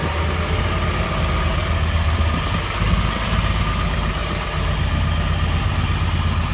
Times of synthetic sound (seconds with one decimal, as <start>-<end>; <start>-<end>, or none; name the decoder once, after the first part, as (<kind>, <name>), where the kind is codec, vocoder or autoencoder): none